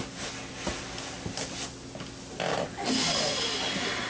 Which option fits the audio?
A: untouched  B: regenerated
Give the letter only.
A